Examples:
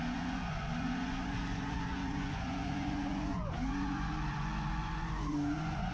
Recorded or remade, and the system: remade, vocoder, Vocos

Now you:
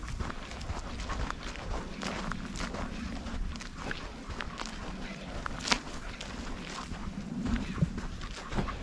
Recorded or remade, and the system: recorded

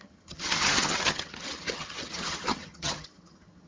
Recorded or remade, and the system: remade, vocoder, HiFi-GAN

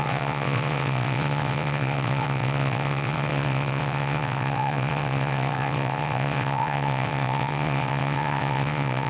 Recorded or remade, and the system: remade, vocoder, WaveNeXt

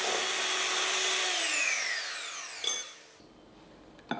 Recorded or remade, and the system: recorded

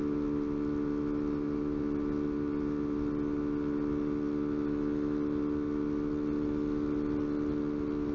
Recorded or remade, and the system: recorded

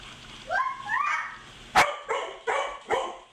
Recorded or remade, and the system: recorded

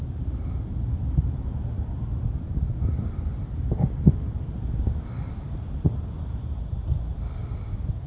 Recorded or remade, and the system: recorded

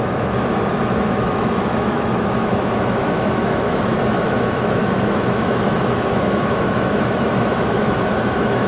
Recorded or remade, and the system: remade, autoencoder, DAC-VAE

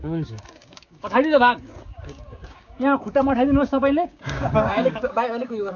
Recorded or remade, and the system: remade, codec, DAC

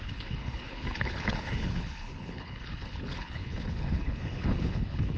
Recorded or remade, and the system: remade, codec, HILCodec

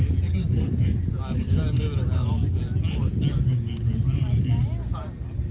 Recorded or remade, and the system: recorded